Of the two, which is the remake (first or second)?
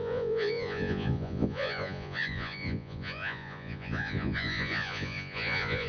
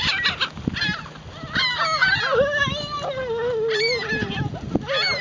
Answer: first